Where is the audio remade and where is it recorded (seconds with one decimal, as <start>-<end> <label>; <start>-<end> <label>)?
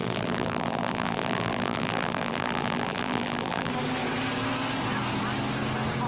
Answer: 0.0-3.7 remade; 3.7-6.1 recorded